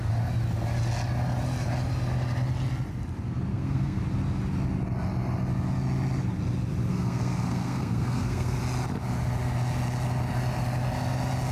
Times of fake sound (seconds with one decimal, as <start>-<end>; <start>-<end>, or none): 3.5-4.0; 6.9-8.6